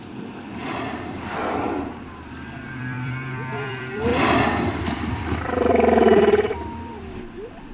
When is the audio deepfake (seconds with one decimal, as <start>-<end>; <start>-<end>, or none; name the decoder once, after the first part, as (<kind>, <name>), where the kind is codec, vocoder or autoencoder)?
0.0-7.7 (vocoder, BigVGAN v2)